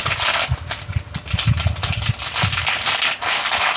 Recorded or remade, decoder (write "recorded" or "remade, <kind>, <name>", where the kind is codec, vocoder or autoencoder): recorded